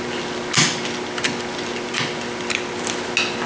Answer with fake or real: real